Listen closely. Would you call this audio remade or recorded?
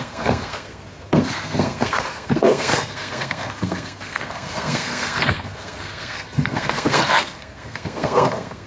remade